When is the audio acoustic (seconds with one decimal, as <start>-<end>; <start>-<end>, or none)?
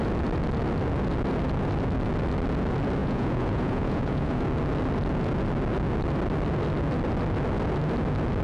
0.0-3.0; 4.4-8.4